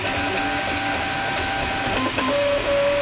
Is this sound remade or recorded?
recorded